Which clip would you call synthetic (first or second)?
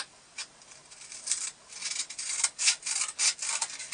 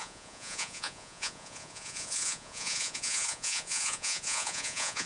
second